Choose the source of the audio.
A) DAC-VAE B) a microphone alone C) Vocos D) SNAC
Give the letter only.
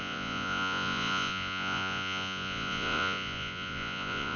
C